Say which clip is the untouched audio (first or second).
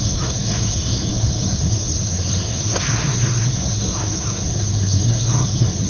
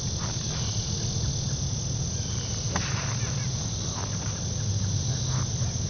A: second